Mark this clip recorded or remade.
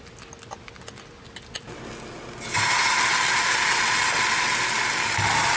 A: recorded